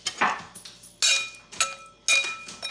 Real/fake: real